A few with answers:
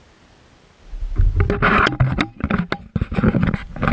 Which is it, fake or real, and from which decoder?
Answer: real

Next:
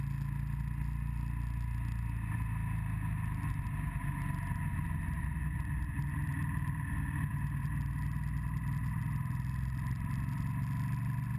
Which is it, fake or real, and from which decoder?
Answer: real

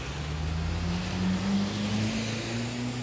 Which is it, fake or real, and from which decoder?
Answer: real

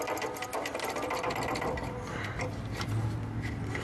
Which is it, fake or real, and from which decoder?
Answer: real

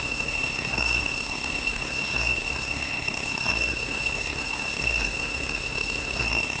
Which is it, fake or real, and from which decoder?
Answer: fake, codec, SNAC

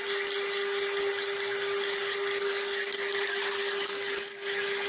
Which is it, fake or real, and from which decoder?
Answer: real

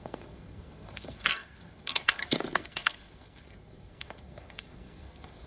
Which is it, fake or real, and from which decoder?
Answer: fake, codec, SNAC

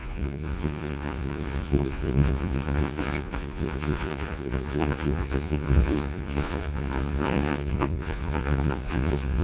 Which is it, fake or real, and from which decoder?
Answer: fake, vocoder, Vocos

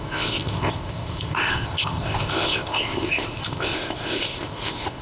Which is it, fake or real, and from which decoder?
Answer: fake, codec, ZipCodec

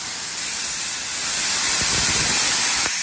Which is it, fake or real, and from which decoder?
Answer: real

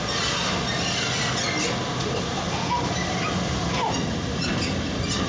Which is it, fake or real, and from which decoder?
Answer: real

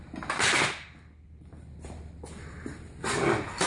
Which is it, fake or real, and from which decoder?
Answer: real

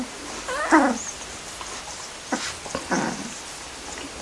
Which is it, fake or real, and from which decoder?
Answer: real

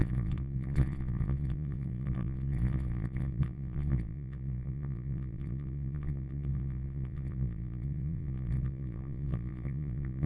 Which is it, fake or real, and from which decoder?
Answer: fake, vocoder, Vocos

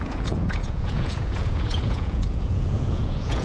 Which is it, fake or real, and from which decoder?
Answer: fake, vocoder, Vocos